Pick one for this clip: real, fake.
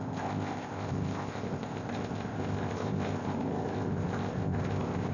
fake